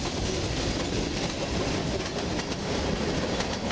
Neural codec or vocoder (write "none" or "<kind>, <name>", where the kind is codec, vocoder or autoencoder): none